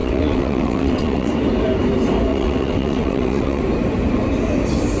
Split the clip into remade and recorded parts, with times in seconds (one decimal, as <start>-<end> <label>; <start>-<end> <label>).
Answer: 0.0-1.3 remade; 1.3-2.3 recorded; 2.3-3.6 remade; 3.6-5.0 recorded